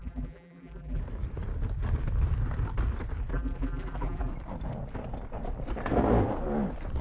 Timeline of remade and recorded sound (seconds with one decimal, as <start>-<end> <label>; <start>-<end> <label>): 0.0-1.0 remade; 1.0-3.3 recorded; 3.3-4.3 remade; 4.3-7.0 recorded

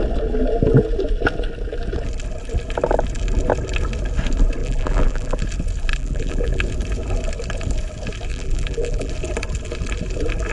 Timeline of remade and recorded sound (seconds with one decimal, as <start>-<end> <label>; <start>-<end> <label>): 0.0-4.6 recorded; 4.6-5.4 remade; 5.4-5.9 recorded; 5.9-6.6 remade; 6.6-8.3 recorded; 8.3-9.1 remade; 9.1-10.5 recorded

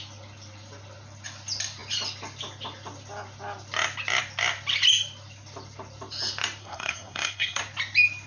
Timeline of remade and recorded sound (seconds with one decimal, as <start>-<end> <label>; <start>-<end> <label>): 0.0-6.6 recorded; 6.6-7.6 remade; 7.6-8.3 recorded

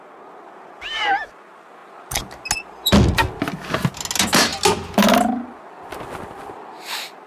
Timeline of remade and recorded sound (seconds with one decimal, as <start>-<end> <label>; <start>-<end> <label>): 0.0-7.3 recorded